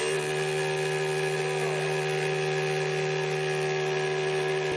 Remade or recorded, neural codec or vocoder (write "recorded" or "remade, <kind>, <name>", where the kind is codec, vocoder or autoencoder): recorded